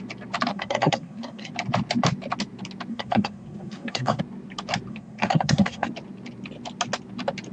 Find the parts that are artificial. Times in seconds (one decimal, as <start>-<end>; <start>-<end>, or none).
0.5-1.5; 2.9-4.2; 4.9-5.9